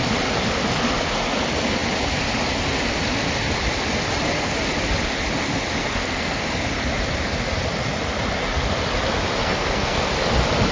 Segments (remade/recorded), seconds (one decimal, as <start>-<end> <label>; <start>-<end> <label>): 0.0-5.8 recorded; 5.8-6.4 remade; 6.4-9.4 recorded; 9.4-10.1 remade; 10.1-10.7 recorded